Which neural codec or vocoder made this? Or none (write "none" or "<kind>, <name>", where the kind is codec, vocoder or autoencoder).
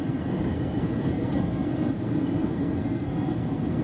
codec, SNAC